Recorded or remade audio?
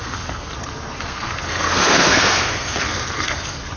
remade